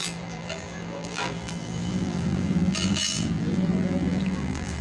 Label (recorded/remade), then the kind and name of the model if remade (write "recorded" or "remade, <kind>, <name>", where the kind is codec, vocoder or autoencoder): remade, vocoder, BigVGAN v2